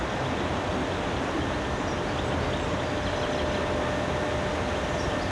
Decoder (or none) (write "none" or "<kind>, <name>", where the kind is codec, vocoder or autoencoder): none